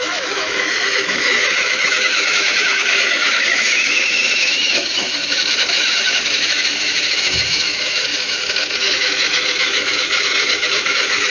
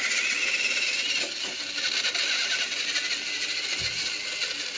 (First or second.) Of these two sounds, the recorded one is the second